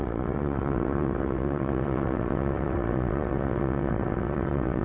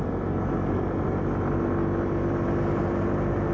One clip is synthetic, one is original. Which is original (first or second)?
second